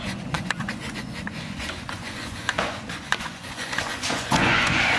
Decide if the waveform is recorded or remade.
remade